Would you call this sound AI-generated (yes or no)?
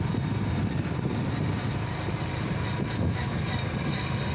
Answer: no